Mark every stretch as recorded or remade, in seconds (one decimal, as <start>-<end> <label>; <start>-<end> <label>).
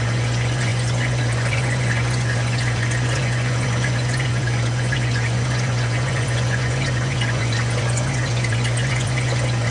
0.0-9.7 remade